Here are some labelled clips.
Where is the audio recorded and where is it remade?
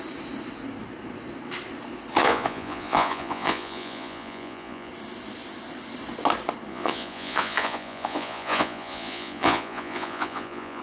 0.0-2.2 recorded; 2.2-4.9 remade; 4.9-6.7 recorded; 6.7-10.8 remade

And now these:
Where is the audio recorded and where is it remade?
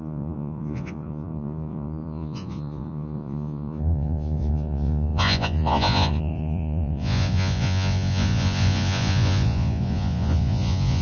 0.0-11.0 remade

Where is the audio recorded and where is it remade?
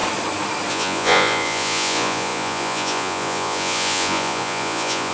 0.0-0.7 recorded; 0.7-5.1 remade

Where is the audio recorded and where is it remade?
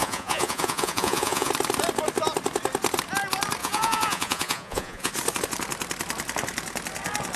0.0-1.5 remade; 1.5-3.6 recorded; 3.6-5.1 remade; 5.1-7.4 recorded